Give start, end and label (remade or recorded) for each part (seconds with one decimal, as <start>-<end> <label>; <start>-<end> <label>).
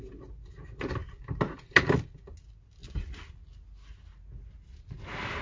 0.0-5.4 recorded